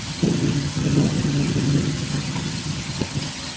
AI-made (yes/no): yes